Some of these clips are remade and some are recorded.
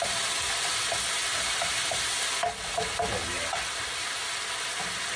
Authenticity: recorded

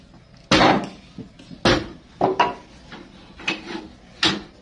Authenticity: recorded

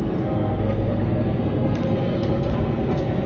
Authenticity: remade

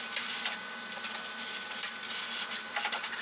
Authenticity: recorded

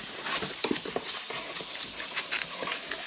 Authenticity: recorded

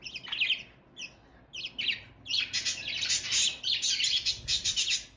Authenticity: recorded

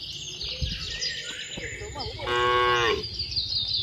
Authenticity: recorded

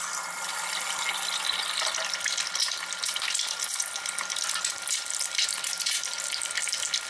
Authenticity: recorded